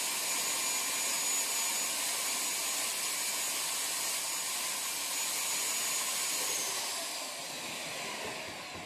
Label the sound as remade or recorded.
recorded